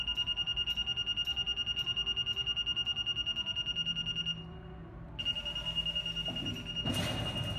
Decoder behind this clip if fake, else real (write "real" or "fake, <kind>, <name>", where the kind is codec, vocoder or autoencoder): real